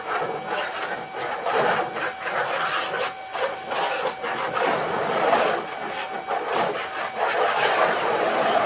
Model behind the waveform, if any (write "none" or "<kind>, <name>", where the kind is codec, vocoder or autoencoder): none